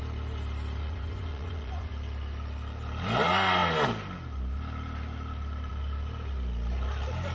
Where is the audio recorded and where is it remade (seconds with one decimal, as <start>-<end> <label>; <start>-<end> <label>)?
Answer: 0.0-0.8 recorded; 0.8-1.9 remade; 1.9-7.3 recorded